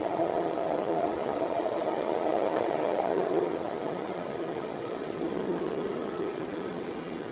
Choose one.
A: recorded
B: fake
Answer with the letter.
B